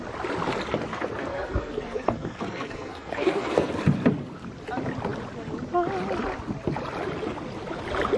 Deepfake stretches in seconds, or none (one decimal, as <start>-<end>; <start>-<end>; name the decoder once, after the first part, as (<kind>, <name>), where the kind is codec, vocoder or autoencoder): 0.9-3.7 (codec, SNAC)